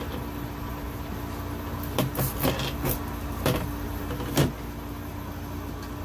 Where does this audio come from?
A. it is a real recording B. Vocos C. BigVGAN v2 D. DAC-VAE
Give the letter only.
A